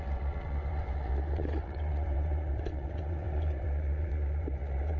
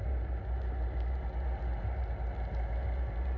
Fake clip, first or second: first